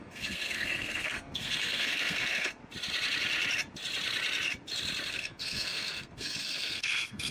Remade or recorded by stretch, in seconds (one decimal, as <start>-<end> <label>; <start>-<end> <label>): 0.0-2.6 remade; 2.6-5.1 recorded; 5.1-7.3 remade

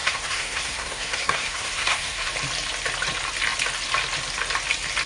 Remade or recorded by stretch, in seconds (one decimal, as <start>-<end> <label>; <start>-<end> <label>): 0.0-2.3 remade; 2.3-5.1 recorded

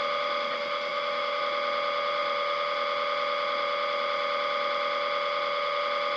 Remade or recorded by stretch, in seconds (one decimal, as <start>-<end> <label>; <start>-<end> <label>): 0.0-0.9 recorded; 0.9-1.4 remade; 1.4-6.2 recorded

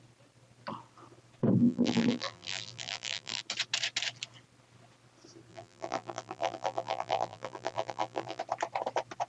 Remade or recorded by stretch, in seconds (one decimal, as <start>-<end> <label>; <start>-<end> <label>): 0.0-1.6 recorded; 1.6-3.4 remade; 3.4-5.5 recorded; 5.5-8.4 remade; 8.4-9.3 recorded

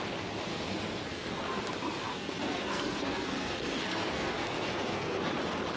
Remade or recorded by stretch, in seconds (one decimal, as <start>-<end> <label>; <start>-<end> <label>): 0.0-0.5 recorded; 0.5-1.5 remade; 1.5-2.1 recorded; 2.1-5.3 remade; 5.3-5.8 recorded

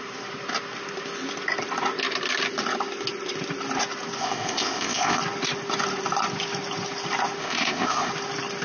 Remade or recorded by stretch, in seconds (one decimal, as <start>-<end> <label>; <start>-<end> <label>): 0.0-4.2 recorded; 4.2-5.2 remade; 5.2-7.4 recorded; 7.4-8.1 remade; 8.1-8.6 recorded